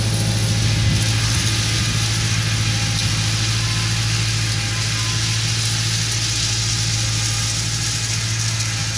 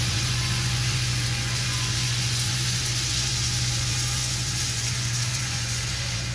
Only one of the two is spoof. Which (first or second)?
second